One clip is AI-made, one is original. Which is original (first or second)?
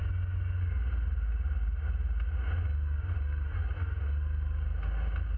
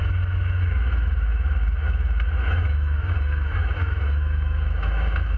first